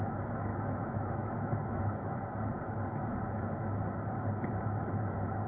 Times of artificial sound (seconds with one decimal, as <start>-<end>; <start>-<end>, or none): 0.5-1.8

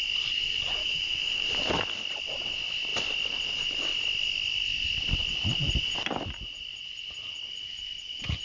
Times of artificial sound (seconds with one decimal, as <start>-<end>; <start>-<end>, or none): 0.8-1.5